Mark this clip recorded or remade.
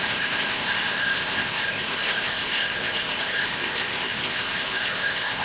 remade